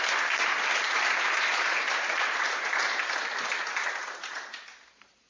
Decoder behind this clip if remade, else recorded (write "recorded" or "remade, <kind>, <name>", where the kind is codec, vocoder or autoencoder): recorded